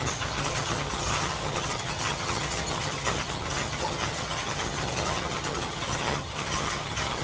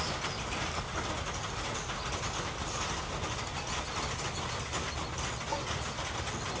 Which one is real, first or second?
second